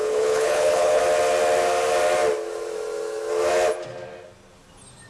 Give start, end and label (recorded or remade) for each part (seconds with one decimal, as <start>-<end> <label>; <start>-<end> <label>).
0.0-1.0 remade; 1.0-5.1 recorded